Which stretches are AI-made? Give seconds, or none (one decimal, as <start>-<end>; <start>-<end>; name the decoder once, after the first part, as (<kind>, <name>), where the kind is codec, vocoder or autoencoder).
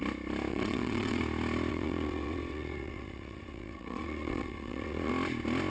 0.5-1.2 (vocoder, WaveNeXt); 1.7-5.1